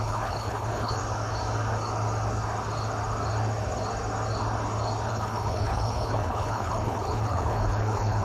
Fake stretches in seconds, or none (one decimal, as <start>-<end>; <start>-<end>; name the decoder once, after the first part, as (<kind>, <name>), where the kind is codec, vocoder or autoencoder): 0.0-1.0 (codec, HILCodec); 5.1-8.2